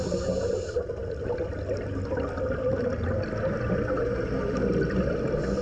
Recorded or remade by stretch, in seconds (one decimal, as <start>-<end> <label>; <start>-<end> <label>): 0.0-5.6 recorded